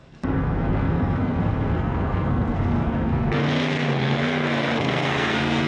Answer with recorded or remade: remade